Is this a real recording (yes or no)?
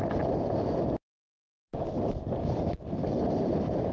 yes